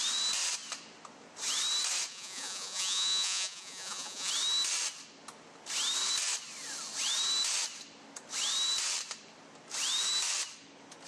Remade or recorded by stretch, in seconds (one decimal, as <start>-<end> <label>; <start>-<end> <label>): 0.0-2.1 recorded; 2.1-4.3 remade; 4.3-11.1 recorded

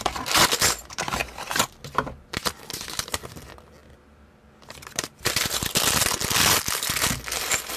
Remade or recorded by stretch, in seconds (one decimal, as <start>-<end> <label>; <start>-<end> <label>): 0.0-3.8 recorded; 3.8-5.6 remade; 5.6-7.8 recorded

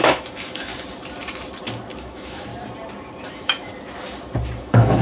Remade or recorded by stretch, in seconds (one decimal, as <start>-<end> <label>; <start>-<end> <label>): 0.0-0.7 remade; 0.7-2.0 recorded; 2.0-2.5 remade; 2.5-3.3 recorded; 3.3-3.7 remade; 3.7-4.6 recorded; 4.6-5.0 remade